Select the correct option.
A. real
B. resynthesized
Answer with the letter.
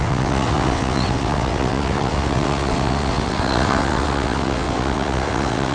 B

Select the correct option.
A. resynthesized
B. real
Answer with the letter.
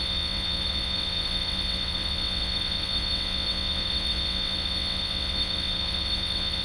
A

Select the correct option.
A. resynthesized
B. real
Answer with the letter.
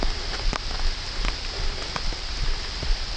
B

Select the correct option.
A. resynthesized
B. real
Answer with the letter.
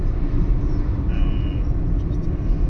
B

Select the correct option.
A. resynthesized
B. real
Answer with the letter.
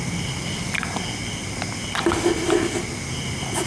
B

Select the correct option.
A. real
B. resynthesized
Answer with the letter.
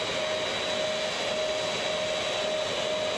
A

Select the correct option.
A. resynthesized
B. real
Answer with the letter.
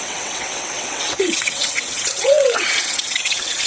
A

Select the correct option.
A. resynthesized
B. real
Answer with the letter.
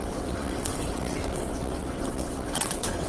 A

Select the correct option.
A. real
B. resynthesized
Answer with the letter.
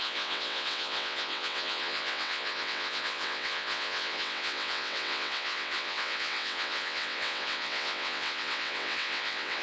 B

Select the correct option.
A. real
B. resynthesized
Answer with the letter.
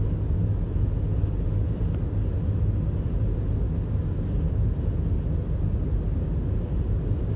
A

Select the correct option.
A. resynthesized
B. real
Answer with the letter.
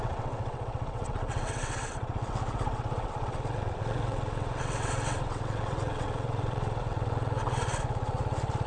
A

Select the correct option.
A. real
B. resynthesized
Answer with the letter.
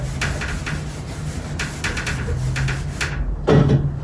A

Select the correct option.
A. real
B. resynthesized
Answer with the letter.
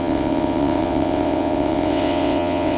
B